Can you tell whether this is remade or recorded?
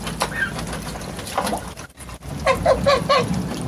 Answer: recorded